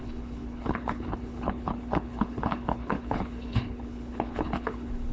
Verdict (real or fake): fake